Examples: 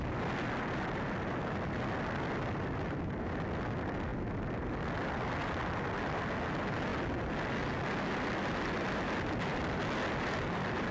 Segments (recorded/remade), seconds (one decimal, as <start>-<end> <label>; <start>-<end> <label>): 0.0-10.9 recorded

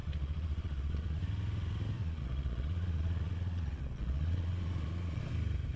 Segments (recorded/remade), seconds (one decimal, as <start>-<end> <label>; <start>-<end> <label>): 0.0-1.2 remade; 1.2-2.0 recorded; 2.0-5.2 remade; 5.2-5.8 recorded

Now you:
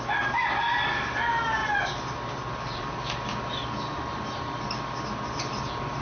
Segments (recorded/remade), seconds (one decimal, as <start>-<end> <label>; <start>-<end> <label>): 0.0-6.0 recorded